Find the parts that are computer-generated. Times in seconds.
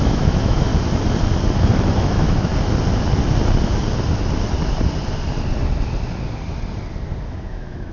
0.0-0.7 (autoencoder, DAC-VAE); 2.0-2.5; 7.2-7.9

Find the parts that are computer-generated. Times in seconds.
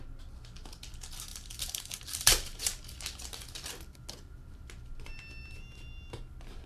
1.3-2.0 (vocoder, BigVGAN v2)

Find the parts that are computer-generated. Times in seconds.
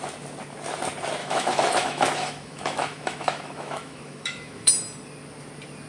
1.2-4.7 (autoencoder, DAC-VAE)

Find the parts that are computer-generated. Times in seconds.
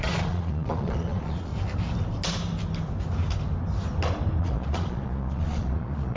0.0-1.5 (vocoder, Vocos); 4.4-6.2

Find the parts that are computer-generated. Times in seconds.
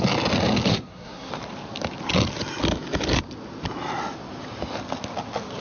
0.7-1.3 (codec, SNAC)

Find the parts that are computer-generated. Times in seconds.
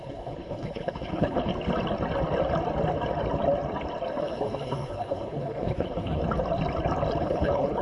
0.0-1.5 (codec, HILCodec); 4.2-6.2; 7.2-7.8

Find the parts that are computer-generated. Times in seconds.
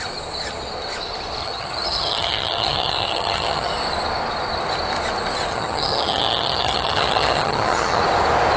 1.4-3.7 (vocoder, HiFi-GAN); 5.5-8.0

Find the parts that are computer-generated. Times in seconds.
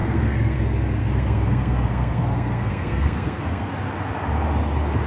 0.0-0.6 (codec, SNAC); 1.0-3.7